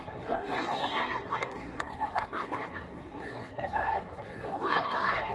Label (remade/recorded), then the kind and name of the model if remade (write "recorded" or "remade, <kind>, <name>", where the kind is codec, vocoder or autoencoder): remade, codec, SNAC